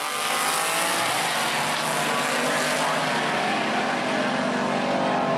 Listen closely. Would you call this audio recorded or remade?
recorded